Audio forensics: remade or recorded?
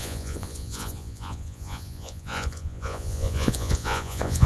remade